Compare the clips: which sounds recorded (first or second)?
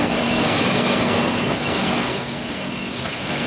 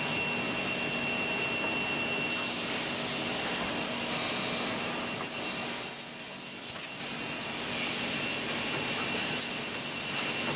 second